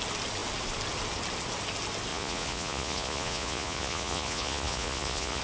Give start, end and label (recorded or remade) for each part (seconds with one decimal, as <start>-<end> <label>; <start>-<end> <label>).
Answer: 0.0-2.1 recorded; 2.1-5.4 remade